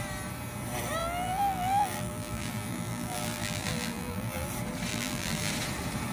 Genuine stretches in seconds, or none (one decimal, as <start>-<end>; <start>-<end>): 0.0-1.0; 4.5-4.9; 5.5-6.1